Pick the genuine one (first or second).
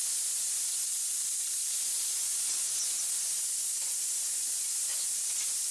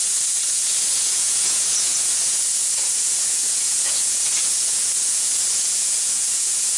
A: first